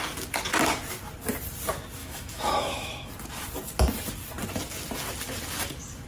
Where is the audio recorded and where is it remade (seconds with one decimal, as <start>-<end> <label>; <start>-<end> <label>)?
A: 0.0-2.0 recorded; 2.0-3.1 remade; 3.1-6.1 recorded